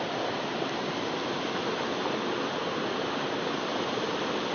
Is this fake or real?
real